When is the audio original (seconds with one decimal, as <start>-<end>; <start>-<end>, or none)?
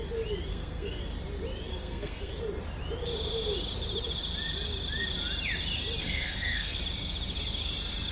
0.0-0.5; 1.0-1.7; 2.3-6.0; 6.8-8.1